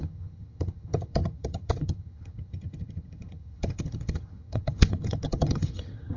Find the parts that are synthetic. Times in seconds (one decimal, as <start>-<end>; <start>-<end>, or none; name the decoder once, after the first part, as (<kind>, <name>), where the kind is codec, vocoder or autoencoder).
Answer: 0.0-6.2 (vocoder, HiFi-GAN)